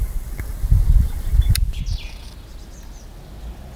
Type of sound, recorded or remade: recorded